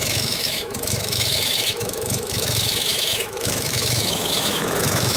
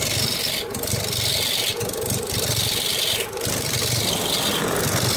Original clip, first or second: second